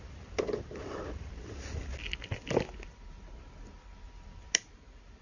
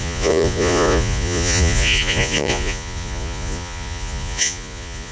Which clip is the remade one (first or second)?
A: second